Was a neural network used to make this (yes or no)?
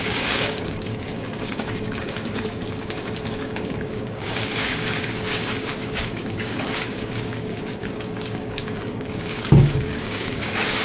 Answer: yes